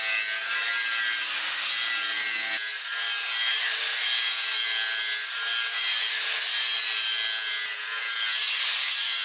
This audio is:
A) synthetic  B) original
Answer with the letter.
B